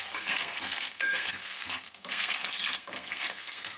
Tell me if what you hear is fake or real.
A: fake